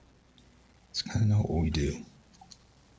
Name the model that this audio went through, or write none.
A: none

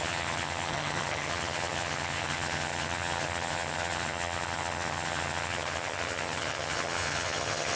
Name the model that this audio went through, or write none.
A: vocoder, HiFi-GAN